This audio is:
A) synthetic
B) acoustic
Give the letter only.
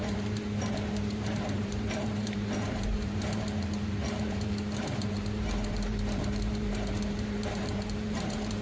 A